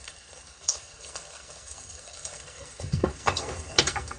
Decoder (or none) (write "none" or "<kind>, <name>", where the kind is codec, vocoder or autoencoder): codec, SNAC